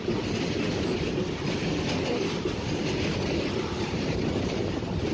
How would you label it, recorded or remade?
recorded